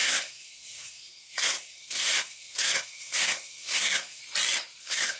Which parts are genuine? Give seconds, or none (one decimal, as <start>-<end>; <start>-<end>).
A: 4.2-4.8